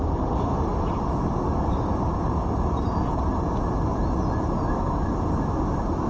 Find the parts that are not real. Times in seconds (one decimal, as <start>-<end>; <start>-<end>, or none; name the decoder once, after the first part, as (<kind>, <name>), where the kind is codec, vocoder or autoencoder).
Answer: none